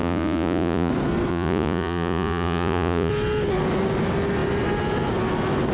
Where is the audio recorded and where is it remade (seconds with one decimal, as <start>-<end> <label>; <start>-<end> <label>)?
0.0-0.9 remade; 0.9-1.3 recorded; 1.3-3.1 remade; 3.1-5.7 recorded